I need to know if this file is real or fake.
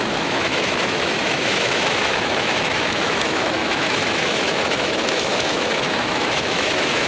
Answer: fake